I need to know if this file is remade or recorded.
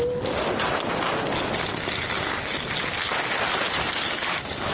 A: recorded